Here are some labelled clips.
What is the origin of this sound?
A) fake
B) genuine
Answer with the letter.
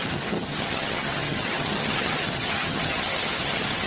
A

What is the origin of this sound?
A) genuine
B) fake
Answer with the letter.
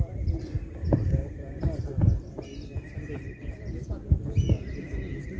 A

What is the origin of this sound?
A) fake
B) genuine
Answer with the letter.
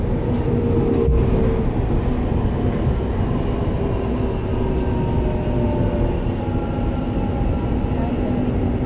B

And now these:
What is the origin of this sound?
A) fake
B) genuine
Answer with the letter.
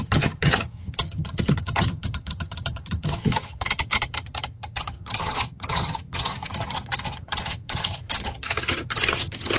A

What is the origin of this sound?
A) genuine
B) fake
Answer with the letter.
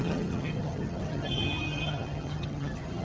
B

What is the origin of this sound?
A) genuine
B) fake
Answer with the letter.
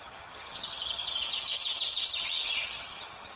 B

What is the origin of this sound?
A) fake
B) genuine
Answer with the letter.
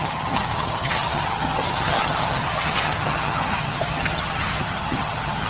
A